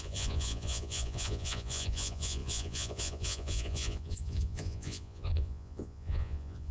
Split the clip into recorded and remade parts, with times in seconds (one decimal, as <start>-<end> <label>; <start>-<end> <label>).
0.0-6.7 remade